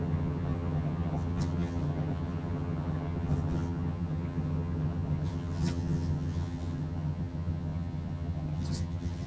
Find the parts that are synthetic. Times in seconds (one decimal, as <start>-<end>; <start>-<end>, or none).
0.0-9.3